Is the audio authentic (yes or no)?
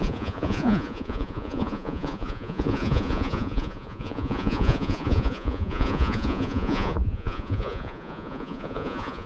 no